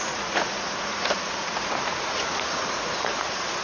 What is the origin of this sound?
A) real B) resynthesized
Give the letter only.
B